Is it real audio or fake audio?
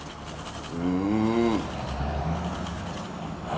real